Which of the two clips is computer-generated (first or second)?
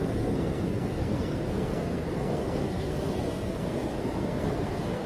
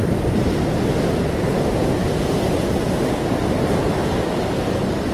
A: first